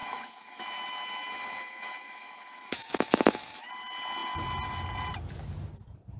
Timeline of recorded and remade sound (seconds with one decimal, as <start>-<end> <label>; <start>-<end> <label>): 0.0-3.7 remade; 3.7-6.2 recorded